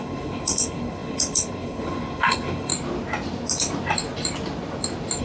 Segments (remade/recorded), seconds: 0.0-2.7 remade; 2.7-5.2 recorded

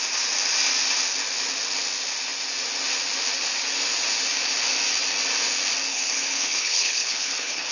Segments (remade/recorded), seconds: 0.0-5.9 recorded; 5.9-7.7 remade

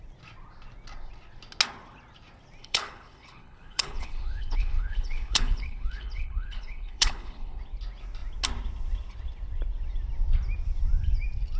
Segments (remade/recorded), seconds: 0.0-2.6 recorded; 2.6-7.6 remade; 7.6-11.6 recorded